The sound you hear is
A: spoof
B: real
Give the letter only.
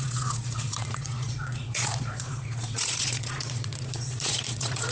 A